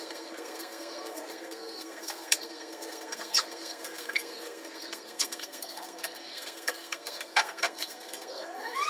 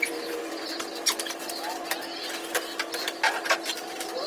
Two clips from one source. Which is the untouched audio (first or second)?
second